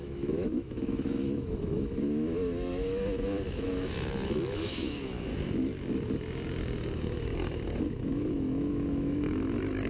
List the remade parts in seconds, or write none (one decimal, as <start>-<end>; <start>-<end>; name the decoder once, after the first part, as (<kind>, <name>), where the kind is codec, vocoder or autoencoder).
0.0-5.3 (autoencoder, DAC-VAE); 7.8-9.9